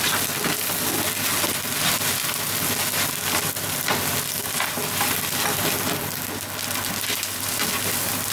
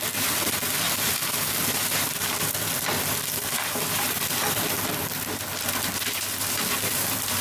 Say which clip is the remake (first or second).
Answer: second